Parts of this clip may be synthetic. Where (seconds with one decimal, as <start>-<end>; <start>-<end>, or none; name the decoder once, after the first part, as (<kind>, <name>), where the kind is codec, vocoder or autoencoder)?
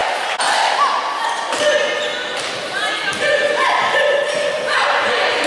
none